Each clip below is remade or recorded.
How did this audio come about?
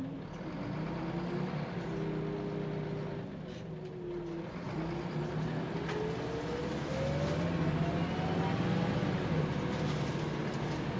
recorded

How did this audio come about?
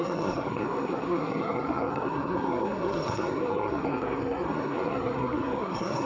remade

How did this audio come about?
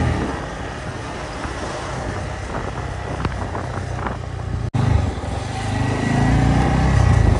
recorded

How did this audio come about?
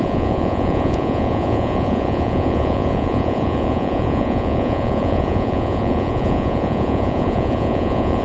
remade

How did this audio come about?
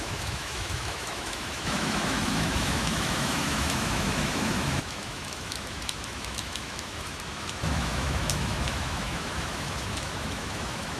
remade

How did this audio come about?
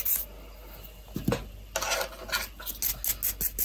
recorded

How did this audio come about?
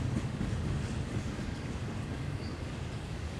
remade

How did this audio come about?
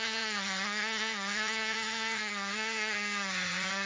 remade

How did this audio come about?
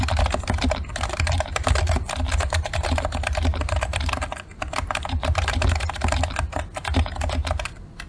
recorded